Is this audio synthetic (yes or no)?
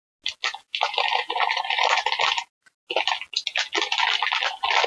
no